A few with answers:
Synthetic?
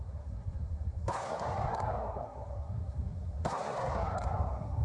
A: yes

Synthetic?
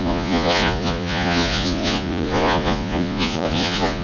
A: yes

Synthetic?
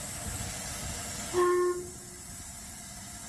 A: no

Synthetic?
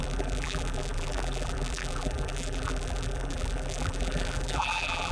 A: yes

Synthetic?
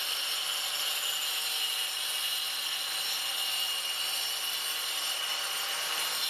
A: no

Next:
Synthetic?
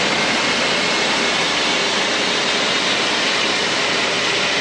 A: no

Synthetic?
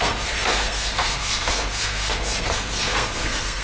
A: yes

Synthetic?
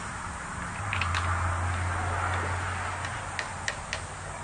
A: no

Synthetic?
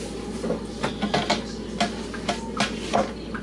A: no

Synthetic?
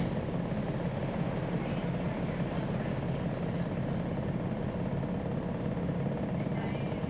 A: no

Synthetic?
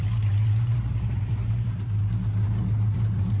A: yes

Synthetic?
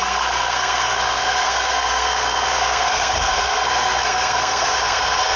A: yes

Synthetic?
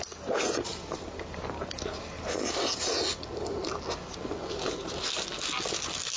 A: no